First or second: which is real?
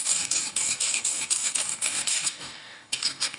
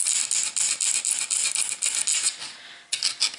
second